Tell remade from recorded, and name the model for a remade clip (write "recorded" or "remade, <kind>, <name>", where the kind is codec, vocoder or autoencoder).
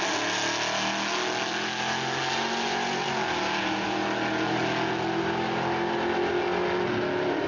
recorded